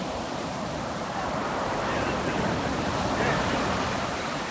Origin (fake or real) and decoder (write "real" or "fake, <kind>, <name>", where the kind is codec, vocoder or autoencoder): fake, vocoder, BigVGAN v2